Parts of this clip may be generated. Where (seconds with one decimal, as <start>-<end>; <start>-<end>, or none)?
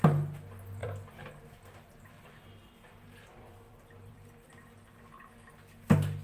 0.8-4.5